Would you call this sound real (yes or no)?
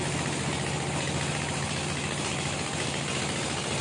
yes